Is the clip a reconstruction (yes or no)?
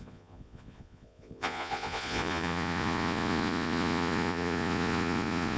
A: yes